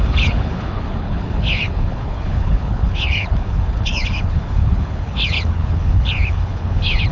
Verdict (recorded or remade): remade